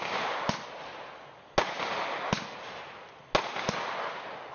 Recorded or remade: recorded